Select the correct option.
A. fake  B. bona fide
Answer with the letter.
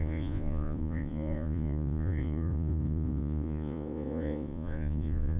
A